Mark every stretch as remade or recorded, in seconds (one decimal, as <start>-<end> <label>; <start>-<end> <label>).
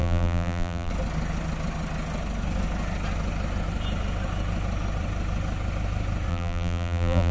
0.0-0.9 remade; 0.9-6.3 recorded; 6.3-7.3 remade